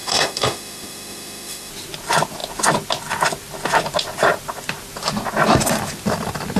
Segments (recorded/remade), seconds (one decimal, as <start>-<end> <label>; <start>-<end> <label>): 0.0-1.7 remade; 1.7-6.6 recorded